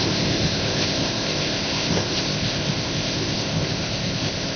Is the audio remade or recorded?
remade